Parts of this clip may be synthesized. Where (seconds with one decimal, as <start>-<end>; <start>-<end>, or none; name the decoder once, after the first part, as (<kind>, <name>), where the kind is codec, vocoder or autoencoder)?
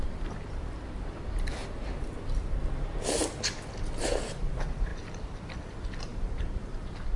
0.0-1.6 (vocoder, BigVGAN v2); 4.4-7.2